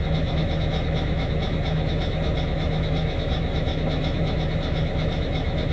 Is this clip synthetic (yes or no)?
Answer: yes